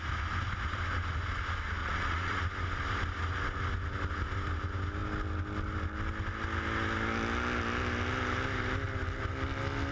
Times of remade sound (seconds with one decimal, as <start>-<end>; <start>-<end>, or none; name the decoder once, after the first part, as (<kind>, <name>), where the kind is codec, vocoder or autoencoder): 1.8-2.4 (vocoder, Vocos)